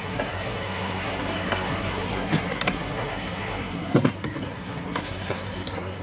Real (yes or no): no